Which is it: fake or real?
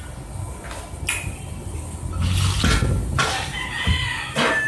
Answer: real